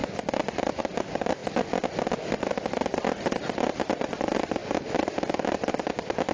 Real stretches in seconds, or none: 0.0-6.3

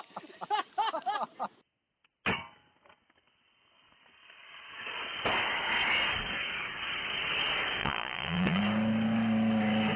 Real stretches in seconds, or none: 0.0-7.8; 8.6-10.0

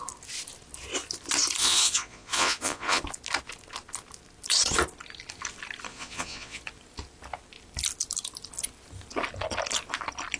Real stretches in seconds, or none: 0.0-1.6; 3.0-5.9; 6.6-10.4

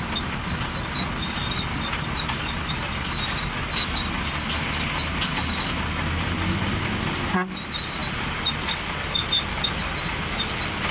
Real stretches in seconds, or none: 0.0-10.9

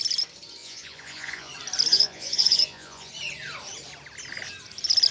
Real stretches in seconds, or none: 0.0-0.6; 1.5-1.9; 3.1-5.1

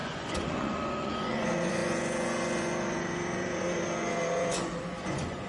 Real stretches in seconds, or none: none

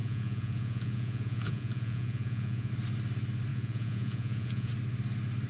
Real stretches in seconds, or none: 2.7-3.5; 4.7-5.5